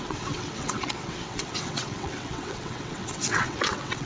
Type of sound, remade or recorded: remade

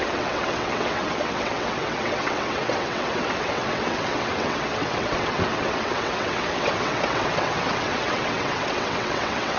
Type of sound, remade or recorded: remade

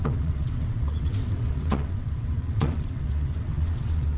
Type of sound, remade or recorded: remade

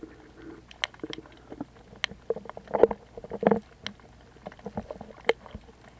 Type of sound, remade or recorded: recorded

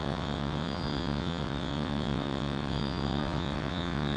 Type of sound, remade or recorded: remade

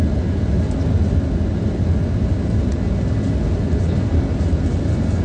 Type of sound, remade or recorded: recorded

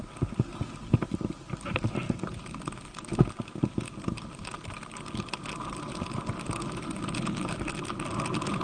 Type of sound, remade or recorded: recorded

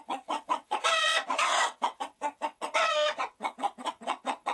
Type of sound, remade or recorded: remade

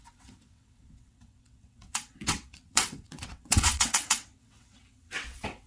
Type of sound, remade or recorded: remade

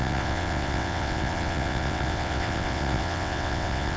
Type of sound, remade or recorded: remade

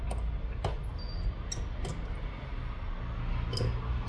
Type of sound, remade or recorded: recorded